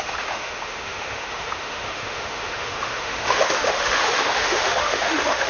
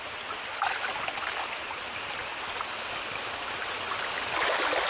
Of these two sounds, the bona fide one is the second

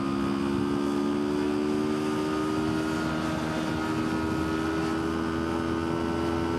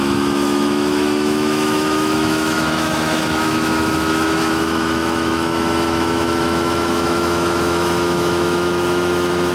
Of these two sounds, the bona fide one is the first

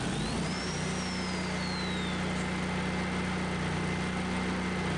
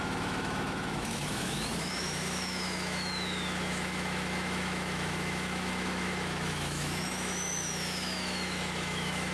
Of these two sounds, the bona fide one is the first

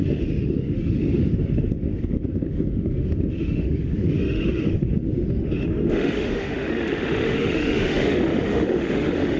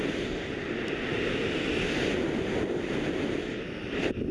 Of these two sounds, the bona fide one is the second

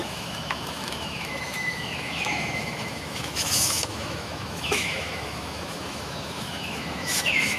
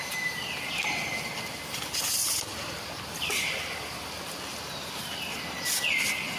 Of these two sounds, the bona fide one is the second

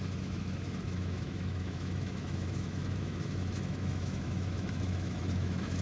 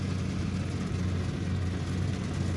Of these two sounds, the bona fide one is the second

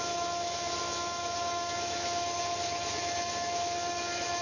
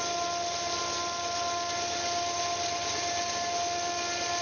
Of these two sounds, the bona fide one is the second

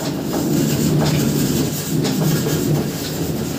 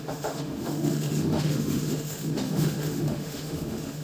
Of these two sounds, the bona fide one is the first